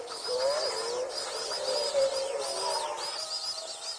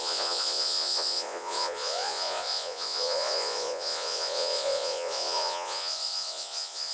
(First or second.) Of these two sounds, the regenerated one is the second